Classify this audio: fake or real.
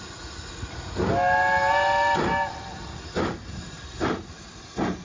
real